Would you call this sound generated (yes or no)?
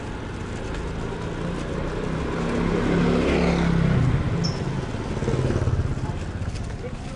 no